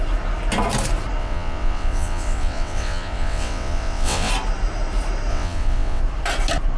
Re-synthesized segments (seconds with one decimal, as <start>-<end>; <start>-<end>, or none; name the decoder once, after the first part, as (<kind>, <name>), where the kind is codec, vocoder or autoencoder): 1.2-4.3 (vocoder, WaveNeXt); 5.3-6.0